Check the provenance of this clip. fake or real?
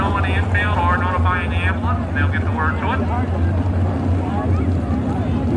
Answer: real